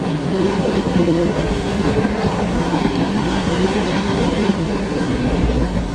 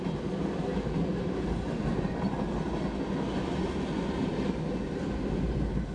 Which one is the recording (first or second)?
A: second